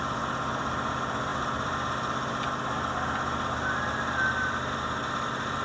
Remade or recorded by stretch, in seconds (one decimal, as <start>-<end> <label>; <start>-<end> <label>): 0.0-5.6 recorded